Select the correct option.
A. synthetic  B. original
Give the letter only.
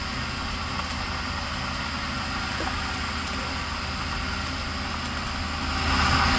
B